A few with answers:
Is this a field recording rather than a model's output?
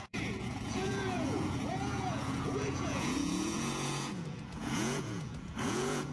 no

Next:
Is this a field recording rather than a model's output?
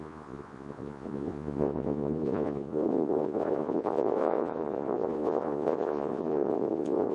no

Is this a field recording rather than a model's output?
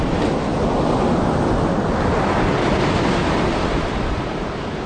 yes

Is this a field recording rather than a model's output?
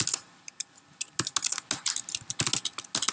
yes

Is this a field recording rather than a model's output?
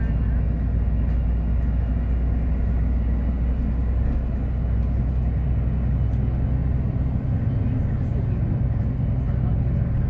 yes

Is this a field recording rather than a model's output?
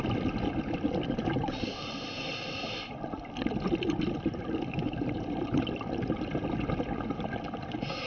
yes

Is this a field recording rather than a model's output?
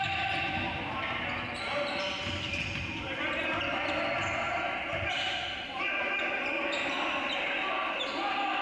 yes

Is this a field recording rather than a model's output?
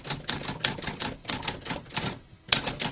yes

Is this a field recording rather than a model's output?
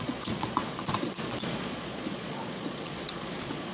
no